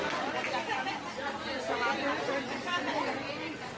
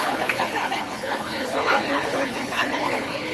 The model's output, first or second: second